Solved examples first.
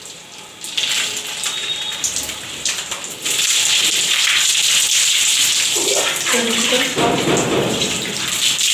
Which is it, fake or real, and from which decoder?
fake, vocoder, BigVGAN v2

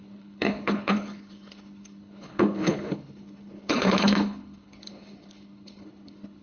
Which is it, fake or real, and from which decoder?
fake, codec, HILCodec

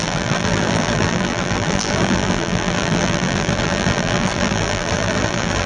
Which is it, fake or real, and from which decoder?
fake, vocoder, BigVGAN v2